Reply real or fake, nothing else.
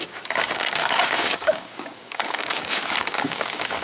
fake